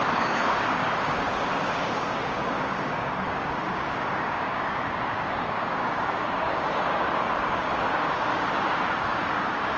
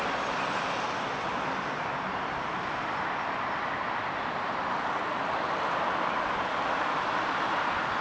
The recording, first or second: second